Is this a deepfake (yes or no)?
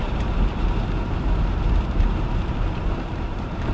yes